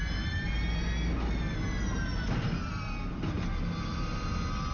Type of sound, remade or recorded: recorded